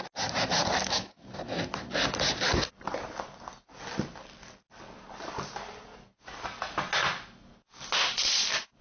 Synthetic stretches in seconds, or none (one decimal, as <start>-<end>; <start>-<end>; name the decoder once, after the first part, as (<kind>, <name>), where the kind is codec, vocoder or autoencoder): 0.8-1.3 (autoencoder, DAC-VAE)